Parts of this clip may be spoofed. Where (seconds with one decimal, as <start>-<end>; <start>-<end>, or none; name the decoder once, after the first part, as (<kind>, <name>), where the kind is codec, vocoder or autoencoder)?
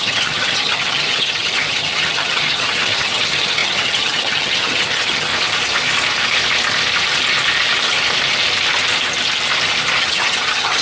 0.0-5.3 (vocoder, HiFi-GAN); 10.0-10.8